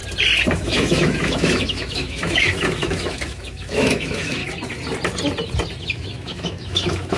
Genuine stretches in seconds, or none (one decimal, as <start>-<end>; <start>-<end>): 0.0-0.5; 4.4-5.8